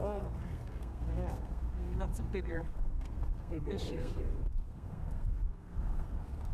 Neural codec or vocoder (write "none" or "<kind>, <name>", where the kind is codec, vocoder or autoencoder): codec, SNAC